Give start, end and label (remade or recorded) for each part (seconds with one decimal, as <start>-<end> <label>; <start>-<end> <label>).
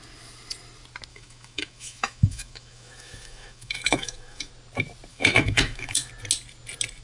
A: 0.0-1.1 recorded; 1.1-4.5 remade; 4.5-5.1 recorded; 5.1-6.1 remade; 6.1-7.0 recorded